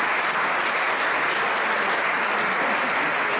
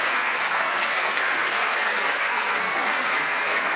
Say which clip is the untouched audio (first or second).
first